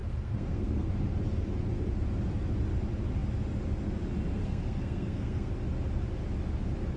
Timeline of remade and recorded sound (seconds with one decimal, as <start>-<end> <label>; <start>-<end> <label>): 0.0-0.9 remade; 0.9-4.3 recorded; 4.3-5.5 remade; 5.5-7.0 recorded